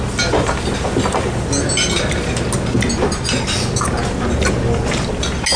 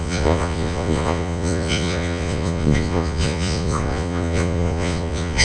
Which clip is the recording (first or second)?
first